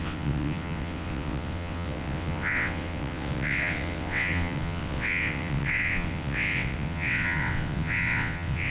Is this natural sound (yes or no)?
no